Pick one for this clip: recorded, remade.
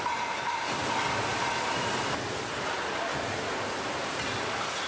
recorded